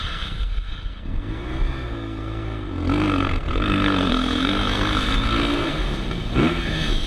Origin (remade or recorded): remade